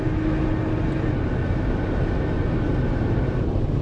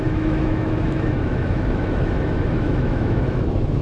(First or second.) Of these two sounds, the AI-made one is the second